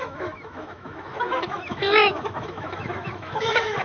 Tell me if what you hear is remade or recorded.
remade